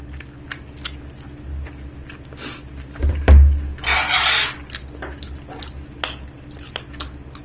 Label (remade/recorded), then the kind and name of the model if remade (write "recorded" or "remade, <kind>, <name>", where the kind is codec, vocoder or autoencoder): recorded